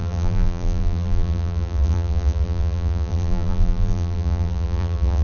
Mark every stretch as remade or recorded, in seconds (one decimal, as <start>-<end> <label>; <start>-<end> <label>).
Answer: 0.0-5.2 remade